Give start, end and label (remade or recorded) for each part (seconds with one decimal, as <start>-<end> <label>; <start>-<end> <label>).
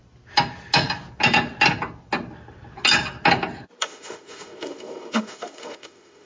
0.0-3.8 recorded; 3.8-6.3 remade